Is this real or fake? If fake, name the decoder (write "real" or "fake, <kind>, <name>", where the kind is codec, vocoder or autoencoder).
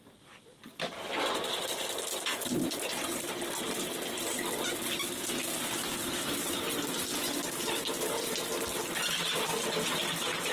real